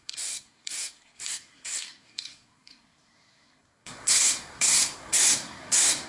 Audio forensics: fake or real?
fake